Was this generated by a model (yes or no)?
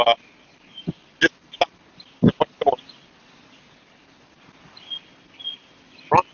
no